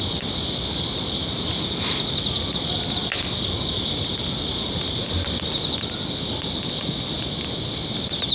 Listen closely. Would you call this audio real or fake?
real